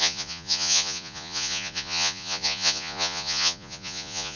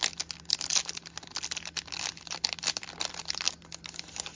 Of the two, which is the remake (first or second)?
first